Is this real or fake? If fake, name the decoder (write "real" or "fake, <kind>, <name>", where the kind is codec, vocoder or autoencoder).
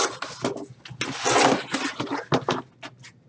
real